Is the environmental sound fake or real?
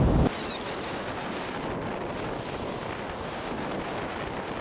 real